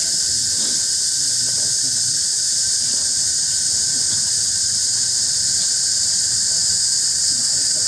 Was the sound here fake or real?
real